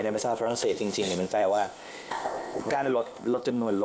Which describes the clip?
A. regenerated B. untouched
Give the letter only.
A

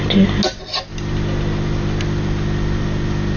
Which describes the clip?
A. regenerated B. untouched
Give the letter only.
B